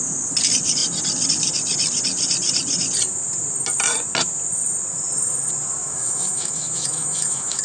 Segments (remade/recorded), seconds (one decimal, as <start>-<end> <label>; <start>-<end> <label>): 0.0-5.8 recorded; 5.8-7.6 remade